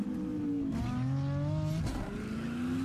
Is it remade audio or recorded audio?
recorded